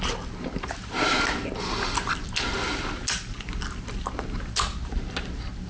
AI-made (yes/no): no